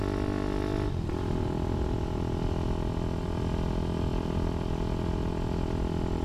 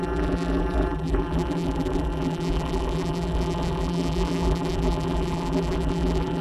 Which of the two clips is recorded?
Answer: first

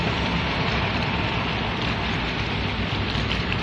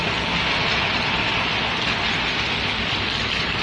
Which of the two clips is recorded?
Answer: second